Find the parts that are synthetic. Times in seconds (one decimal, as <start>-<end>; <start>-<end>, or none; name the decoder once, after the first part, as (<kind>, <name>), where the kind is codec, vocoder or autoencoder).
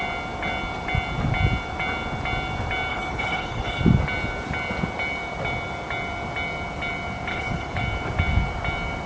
2.9-3.8 (codec, HILCodec); 7.3-7.8